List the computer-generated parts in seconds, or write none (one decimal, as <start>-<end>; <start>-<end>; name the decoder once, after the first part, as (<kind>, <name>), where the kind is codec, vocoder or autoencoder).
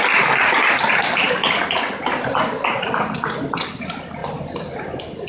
none